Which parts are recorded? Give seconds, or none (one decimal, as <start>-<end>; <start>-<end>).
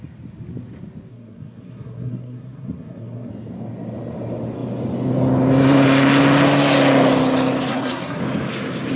0.0-1.1; 3.3-7.7; 8.2-9.0